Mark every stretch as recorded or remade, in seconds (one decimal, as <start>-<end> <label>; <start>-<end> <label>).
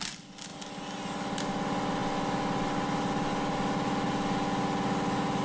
0.0-5.4 recorded